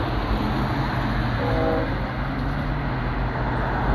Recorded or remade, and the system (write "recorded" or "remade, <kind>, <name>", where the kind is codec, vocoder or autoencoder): recorded